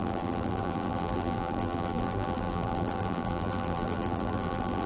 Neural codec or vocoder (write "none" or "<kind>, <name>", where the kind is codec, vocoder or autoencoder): vocoder, BigVGAN v2